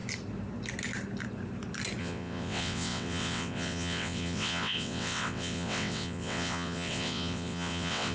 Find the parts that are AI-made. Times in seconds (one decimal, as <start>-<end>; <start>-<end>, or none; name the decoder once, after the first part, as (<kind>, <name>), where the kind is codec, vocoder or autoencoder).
2.0-8.1 (vocoder, WaveNeXt)